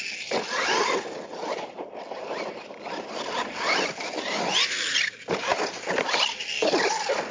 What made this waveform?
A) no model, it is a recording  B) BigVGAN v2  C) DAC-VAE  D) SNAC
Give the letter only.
A